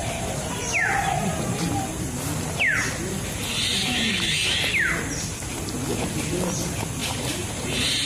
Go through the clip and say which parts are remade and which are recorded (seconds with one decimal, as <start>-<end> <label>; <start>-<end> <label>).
0.0-1.7 remade; 1.7-7.0 recorded; 7.0-8.1 remade